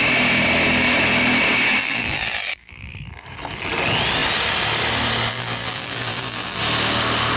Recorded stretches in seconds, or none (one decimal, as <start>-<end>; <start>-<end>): 0.0-1.8; 2.9-5.3; 6.6-7.4